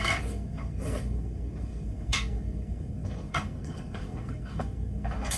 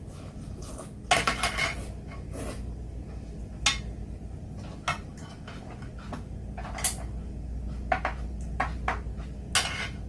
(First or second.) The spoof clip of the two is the first